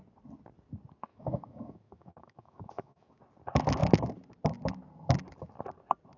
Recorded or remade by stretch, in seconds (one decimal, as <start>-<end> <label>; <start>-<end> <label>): 0.0-1.1 recorded; 1.1-3.2 remade; 3.2-6.2 recorded